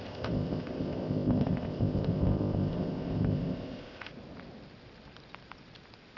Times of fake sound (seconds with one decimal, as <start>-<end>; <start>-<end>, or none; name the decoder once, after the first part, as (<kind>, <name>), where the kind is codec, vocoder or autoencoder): 0.0-4.1 (codec, ZipCodec)